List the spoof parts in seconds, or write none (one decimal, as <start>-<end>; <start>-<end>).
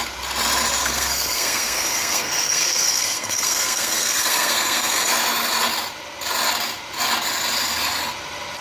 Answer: 0.8-5.1